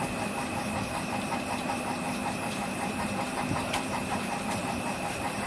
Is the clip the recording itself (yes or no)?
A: no